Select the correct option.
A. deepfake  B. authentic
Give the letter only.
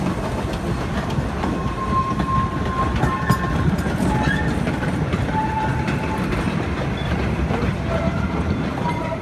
B